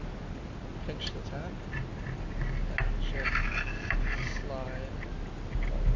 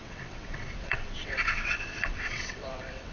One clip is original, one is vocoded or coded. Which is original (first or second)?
first